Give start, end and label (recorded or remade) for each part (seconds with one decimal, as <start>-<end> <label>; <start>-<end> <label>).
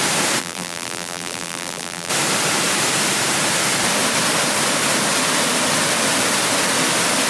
0.0-0.4 recorded; 0.4-2.1 remade; 2.1-7.3 recorded